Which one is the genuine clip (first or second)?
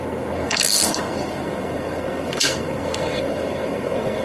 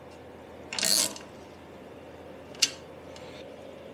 second